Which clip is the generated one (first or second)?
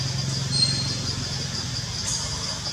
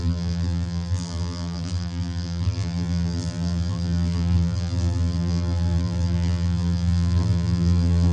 second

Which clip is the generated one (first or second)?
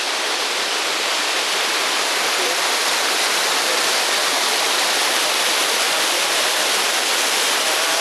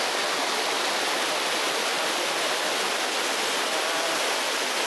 first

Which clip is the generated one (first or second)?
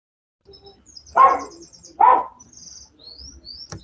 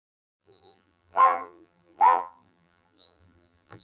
second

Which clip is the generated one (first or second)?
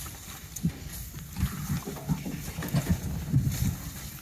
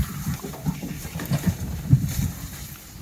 second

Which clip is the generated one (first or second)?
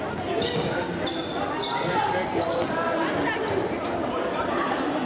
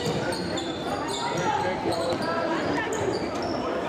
second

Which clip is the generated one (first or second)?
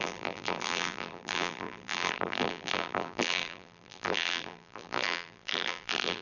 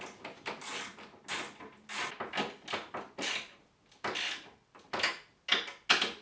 first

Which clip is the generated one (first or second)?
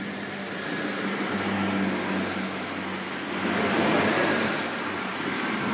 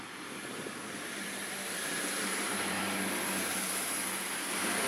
second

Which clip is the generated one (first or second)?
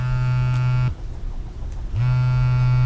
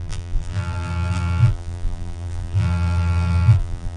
second